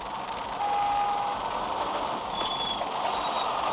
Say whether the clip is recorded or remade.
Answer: recorded